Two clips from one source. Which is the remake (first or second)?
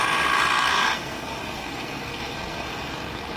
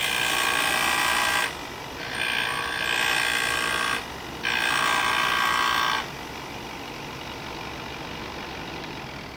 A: first